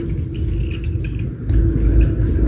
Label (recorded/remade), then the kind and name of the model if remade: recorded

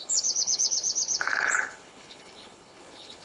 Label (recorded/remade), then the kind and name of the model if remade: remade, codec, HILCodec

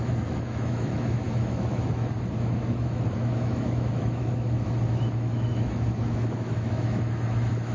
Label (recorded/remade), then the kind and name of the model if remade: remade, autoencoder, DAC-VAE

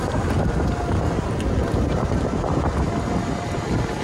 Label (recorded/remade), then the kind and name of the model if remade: recorded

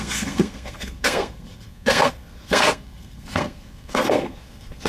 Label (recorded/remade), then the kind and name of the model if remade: remade, codec, SNAC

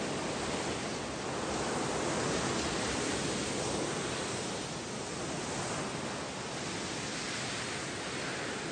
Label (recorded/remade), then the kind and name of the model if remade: recorded